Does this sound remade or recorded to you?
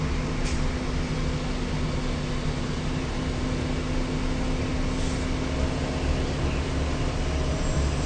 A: recorded